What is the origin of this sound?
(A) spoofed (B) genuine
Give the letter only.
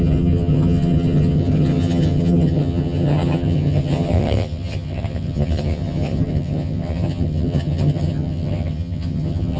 A